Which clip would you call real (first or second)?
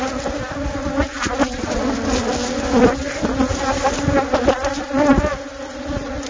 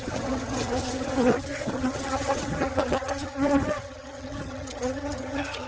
first